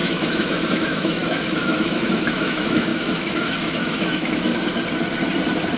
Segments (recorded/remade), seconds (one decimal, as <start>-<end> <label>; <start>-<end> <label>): 0.0-4.5 remade; 4.5-5.8 recorded